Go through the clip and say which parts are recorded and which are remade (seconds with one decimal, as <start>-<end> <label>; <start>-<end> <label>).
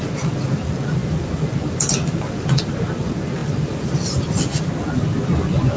0.0-5.8 recorded